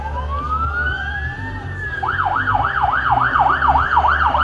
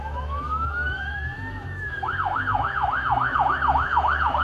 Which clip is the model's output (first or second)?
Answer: second